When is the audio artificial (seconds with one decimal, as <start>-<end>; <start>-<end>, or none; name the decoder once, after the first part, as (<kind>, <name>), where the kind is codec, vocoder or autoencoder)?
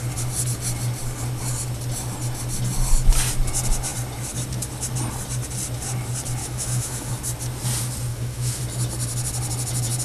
6.4-7.1 (autoencoder, DAC-VAE); 8.1-8.6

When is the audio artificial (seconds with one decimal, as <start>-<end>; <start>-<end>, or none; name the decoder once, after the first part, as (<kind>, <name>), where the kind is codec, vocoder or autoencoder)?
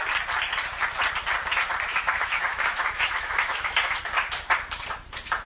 1.9-4.0 (autoencoder, DAC-VAE)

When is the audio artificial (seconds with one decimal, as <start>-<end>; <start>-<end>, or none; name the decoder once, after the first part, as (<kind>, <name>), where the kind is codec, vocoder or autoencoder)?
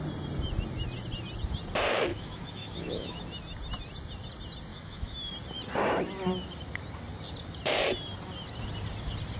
2.1-3.2 (autoencoder, DAC-VAE); 4.7-5.3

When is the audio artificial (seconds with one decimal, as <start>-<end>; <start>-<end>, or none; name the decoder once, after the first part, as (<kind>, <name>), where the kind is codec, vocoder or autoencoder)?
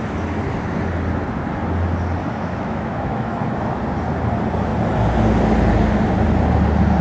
2.2-3.8 (autoencoder, DAC-VAE)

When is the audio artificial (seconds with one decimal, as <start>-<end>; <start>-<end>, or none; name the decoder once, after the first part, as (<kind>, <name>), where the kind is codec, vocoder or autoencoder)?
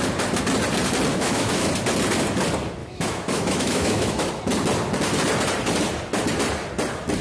1.1-1.7 (autoencoder, DAC-VAE); 2.8-4.3